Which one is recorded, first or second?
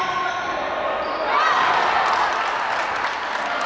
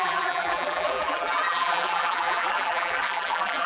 first